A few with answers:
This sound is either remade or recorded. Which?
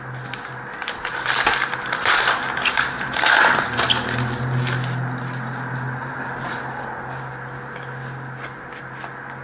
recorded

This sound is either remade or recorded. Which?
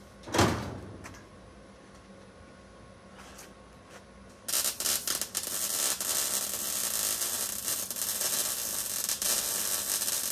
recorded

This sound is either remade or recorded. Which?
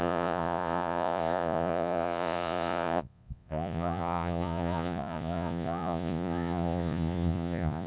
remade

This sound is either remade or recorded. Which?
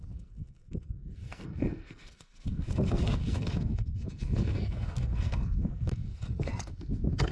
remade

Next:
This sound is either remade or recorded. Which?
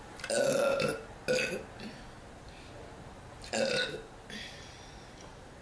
recorded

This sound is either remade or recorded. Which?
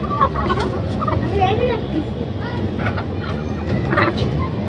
remade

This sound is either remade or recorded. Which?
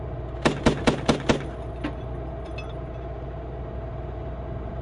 recorded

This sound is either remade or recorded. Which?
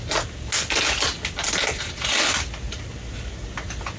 recorded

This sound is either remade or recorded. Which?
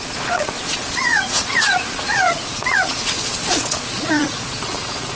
remade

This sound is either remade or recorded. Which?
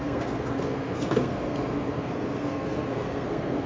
remade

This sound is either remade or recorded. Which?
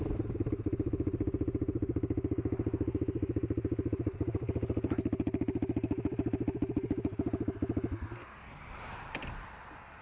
recorded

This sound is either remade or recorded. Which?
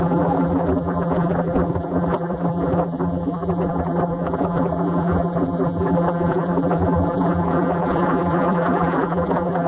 remade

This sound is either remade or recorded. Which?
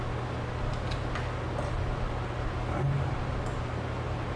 recorded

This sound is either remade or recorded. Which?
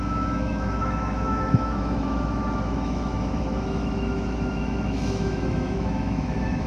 remade